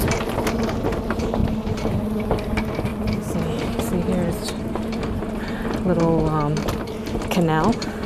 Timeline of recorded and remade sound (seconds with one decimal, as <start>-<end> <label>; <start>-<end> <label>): 0.0-8.1 recorded

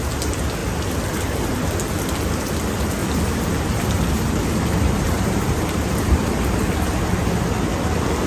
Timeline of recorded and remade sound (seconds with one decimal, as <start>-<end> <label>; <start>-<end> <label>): 0.0-3.0 recorded; 3.0-6.8 remade; 6.8-8.3 recorded

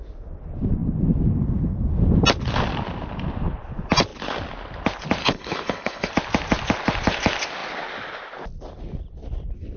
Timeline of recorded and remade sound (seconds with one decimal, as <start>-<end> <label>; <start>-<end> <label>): 0.0-5.2 recorded; 5.2-6.1 remade; 6.1-9.8 recorded

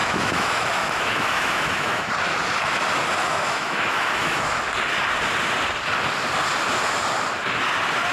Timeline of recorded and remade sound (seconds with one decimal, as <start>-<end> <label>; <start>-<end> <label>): 0.0-2.1 remade; 2.1-3.2 recorded; 3.2-4.6 remade; 4.6-8.1 recorded